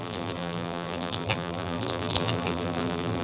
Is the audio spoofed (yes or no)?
yes